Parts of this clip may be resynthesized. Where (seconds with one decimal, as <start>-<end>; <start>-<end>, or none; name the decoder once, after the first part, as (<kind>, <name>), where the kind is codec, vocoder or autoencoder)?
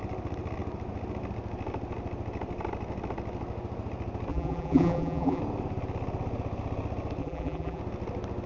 4.3-5.4 (vocoder, BigVGAN v2); 7.2-7.8